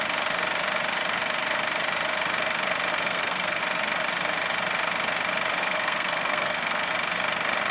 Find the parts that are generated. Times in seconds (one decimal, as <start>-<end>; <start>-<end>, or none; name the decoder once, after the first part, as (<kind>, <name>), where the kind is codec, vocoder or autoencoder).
2.9-3.6 (codec, SNAC); 5.6-6.9